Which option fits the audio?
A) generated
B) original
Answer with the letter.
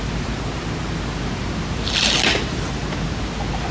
B